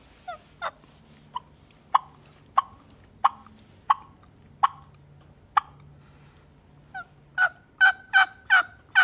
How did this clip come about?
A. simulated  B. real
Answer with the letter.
B